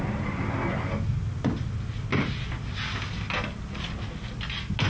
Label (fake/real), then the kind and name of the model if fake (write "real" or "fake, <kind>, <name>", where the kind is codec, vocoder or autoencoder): real